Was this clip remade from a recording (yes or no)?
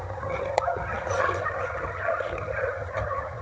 yes